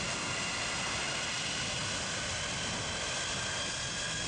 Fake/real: real